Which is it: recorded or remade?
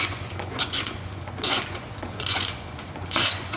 remade